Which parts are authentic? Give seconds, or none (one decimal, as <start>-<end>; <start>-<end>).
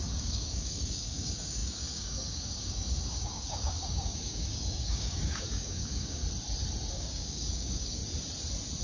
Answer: 6.2-6.9; 8.0-8.8